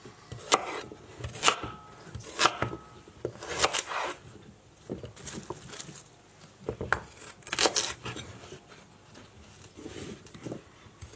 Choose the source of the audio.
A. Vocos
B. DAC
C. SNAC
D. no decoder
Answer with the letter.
D